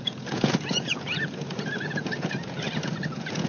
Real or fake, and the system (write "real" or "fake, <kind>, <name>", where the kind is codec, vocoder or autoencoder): fake, vocoder, Vocos